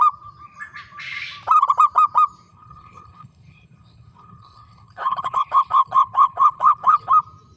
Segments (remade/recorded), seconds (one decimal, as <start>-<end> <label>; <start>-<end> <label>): 0.0-2.5 recorded; 2.5-7.1 remade; 7.1-7.6 recorded